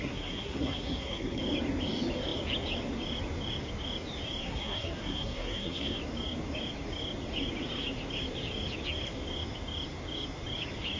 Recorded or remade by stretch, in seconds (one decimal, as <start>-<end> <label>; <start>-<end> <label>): 0.0-1.4 remade; 1.4-4.4 recorded; 4.4-6.0 remade; 6.0-11.0 recorded